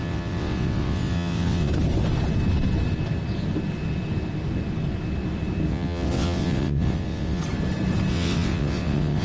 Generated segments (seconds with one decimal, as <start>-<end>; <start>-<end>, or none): 0.0-1.7; 5.7-7.4; 8.1-9.2